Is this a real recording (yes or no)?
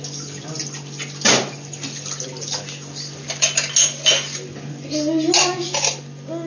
yes